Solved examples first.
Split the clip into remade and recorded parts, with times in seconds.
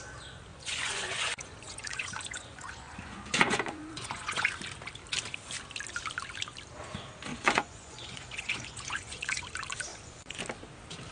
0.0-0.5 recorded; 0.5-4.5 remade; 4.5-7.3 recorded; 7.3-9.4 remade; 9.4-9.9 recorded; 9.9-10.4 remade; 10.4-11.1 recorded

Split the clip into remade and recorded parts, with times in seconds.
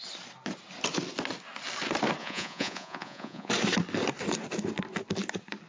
0.0-2.2 recorded; 2.2-3.5 remade; 3.5-5.7 recorded